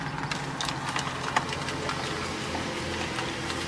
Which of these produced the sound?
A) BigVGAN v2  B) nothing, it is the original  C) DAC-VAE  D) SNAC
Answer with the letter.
B